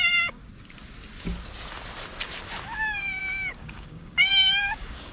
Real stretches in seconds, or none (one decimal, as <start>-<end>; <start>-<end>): 0.4-2.6